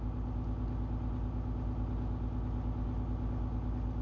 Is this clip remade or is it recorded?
recorded